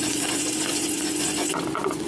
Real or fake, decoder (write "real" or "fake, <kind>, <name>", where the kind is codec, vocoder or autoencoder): fake, vocoder, Vocos